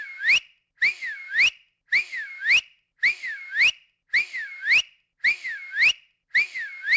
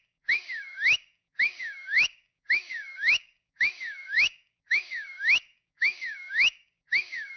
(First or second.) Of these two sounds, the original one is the first